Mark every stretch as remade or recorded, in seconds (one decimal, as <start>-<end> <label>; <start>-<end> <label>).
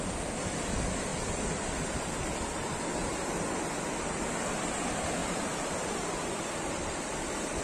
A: 0.0-3.0 recorded; 3.0-3.6 remade; 3.6-5.2 recorded; 5.2-7.6 remade